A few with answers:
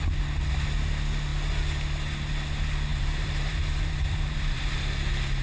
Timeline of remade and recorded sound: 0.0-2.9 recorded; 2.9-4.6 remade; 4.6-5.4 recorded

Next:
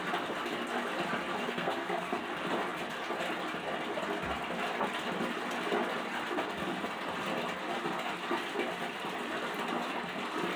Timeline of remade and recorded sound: 0.0-1.4 recorded; 1.4-2.2 remade; 2.2-10.6 recorded

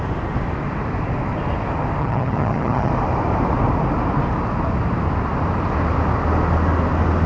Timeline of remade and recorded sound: 0.0-2.0 recorded; 2.0-2.9 remade; 2.9-7.3 recorded

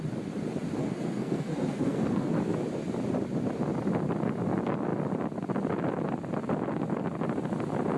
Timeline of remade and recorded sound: 0.0-0.8 recorded; 0.8-2.4 remade; 2.4-8.0 recorded

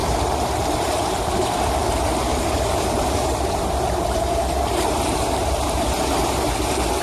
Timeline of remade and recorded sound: 0.0-1.8 remade; 1.8-2.3 recorded; 2.3-6.5 remade; 6.5-7.0 recorded

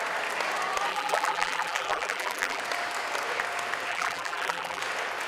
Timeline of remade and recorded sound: 0.0-0.9 recorded; 0.9-2.6 remade; 2.6-3.9 recorded; 3.9-4.8 remade; 4.8-5.3 recorded

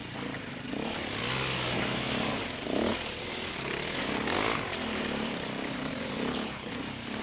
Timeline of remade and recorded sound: 0.0-6.3 recorded; 6.3-6.8 remade; 6.8-7.2 recorded